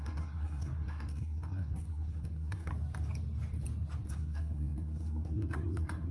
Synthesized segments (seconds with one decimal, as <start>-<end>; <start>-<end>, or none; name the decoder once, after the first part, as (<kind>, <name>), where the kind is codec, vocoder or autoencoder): 0.0-2.7 (codec, SNAC); 4.1-6.1